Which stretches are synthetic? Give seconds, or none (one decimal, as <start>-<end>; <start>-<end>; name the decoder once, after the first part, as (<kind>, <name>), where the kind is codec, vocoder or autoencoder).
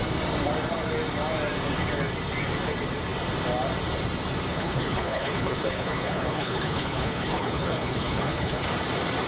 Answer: 4.5-8.7 (codec, HILCodec)